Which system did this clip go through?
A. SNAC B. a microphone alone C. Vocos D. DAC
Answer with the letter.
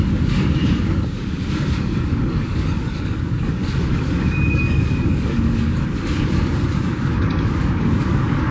D